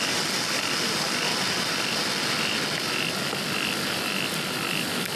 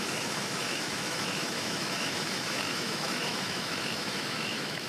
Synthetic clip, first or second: second